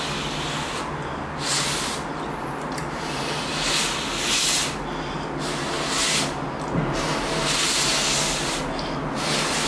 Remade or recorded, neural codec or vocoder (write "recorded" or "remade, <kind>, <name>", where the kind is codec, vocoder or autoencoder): recorded